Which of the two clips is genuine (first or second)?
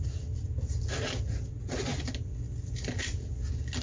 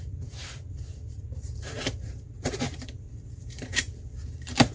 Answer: first